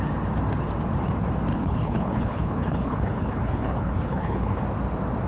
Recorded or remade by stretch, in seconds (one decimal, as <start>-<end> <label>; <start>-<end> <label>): 0.0-1.5 recorded; 1.5-4.6 remade; 4.6-5.3 recorded

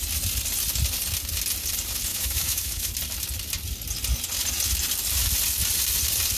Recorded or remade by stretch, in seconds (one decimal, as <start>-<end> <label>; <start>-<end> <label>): 0.0-2.1 recorded; 2.1-2.9 remade; 2.9-6.4 recorded

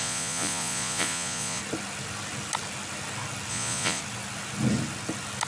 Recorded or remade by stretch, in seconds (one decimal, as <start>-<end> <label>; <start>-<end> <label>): 0.0-1.6 remade; 1.6-3.5 recorded; 3.5-4.0 remade; 4.0-5.5 recorded

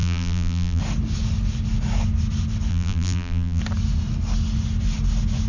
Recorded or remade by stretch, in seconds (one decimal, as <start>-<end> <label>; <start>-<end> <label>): 0.0-0.8 remade; 0.8-2.7 recorded; 2.7-3.6 remade; 3.6-5.5 recorded

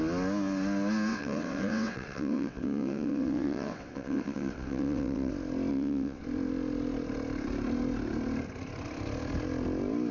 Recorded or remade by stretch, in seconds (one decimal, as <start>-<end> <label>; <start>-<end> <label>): 0.0-1.1 recorded; 1.1-5.3 remade; 5.3-5.7 recorded; 5.7-6.2 remade; 6.2-10.1 recorded